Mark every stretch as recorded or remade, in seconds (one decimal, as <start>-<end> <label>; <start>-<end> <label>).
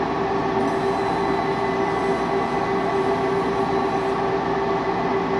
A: 0.0-5.4 recorded